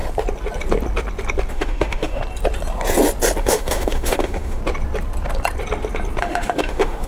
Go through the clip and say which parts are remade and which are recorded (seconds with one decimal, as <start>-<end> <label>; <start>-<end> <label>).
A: 0.0-1.5 recorded; 1.5-2.2 remade; 2.2-3.4 recorded; 3.4-4.6 remade; 4.6-6.2 recorded; 6.2-7.1 remade